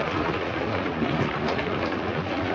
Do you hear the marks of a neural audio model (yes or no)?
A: yes